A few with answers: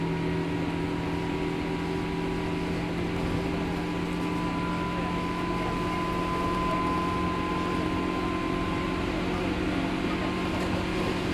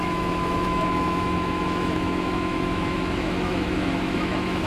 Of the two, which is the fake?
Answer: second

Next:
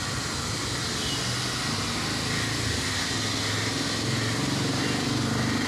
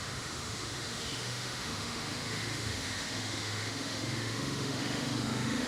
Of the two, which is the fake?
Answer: second